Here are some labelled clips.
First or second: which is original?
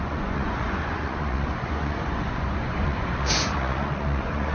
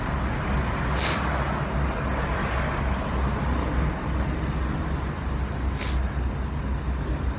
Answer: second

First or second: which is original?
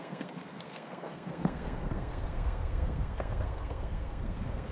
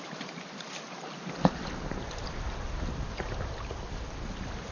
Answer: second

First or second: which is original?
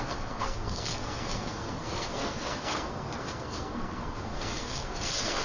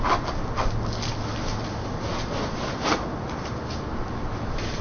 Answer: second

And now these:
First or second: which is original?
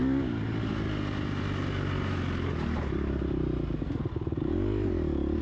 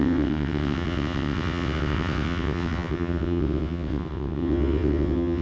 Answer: first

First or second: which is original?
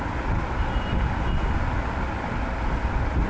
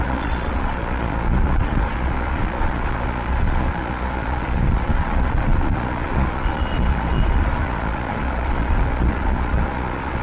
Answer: first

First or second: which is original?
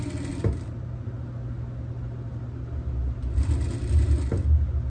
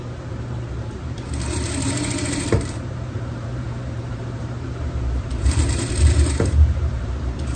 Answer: first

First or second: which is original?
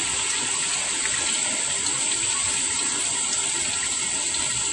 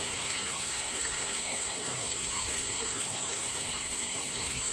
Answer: first